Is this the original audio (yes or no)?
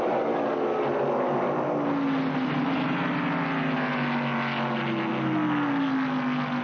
yes